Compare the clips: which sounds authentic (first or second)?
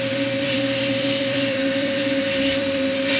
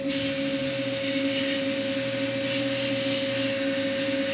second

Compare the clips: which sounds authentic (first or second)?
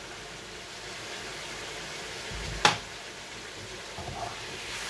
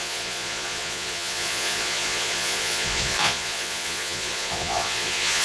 first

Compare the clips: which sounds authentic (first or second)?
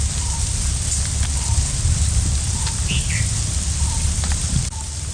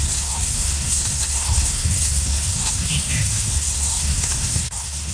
first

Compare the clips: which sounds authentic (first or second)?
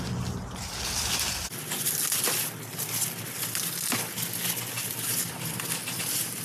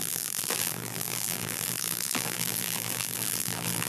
first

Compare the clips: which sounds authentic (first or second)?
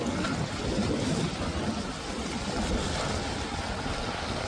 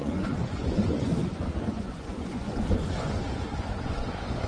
first